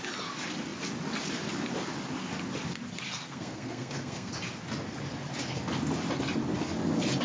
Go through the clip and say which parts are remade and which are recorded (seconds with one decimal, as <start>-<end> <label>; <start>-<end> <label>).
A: 0.0-3.2 recorded; 3.2-4.3 remade; 4.3-7.2 recorded